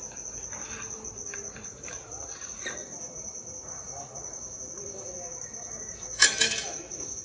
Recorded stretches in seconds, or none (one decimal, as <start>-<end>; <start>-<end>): 0.0-2.8